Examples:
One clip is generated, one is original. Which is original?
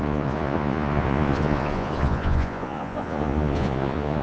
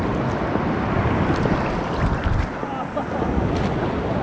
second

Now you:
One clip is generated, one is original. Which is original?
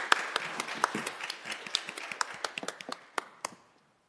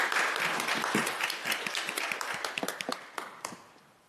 first